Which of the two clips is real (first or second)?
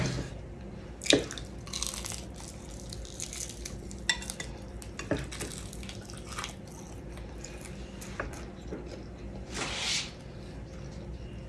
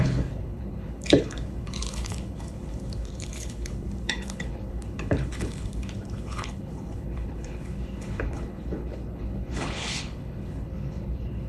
first